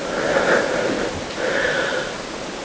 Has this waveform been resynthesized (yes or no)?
no